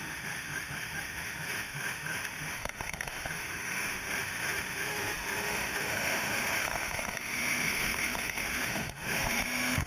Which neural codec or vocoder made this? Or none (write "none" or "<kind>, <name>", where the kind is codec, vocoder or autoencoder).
autoencoder, DAC-VAE